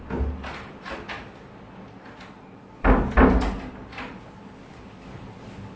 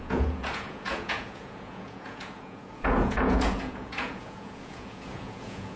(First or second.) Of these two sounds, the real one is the first